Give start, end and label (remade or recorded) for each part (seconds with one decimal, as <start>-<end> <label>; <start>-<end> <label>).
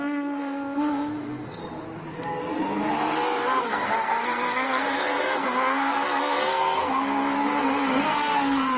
0.0-1.6 remade; 1.6-3.6 recorded; 3.6-8.8 remade